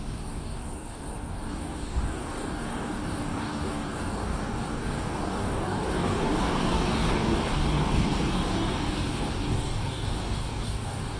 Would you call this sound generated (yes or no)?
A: yes